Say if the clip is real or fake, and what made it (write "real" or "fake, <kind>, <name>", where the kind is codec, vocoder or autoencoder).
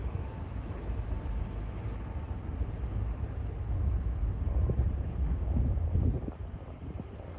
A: real